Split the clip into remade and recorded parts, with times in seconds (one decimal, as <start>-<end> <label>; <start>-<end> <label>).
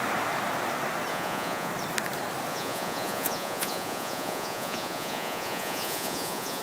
0.0-1.1 recorded; 1.1-1.7 remade; 1.7-2.5 recorded; 2.5-6.6 remade